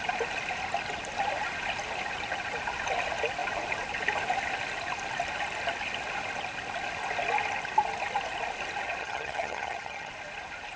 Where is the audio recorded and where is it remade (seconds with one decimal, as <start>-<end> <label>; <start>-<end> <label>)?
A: 0.0-9.0 recorded; 9.0-10.1 remade; 10.1-10.8 recorded